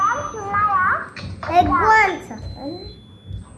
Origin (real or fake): real